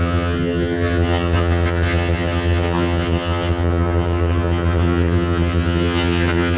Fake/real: fake